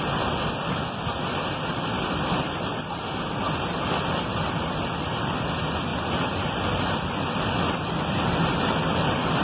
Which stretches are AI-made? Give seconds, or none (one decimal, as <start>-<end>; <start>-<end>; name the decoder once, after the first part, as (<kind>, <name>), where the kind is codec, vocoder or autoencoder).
none